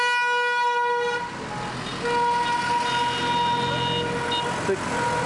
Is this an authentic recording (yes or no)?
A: yes